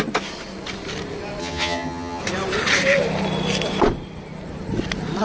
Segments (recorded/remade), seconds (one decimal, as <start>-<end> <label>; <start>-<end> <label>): 0.0-1.4 recorded; 1.4-2.2 remade; 2.2-5.2 recorded